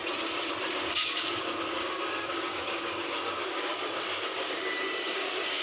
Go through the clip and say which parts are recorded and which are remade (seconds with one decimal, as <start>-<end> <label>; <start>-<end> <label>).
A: 0.0-0.6 recorded; 0.6-5.6 remade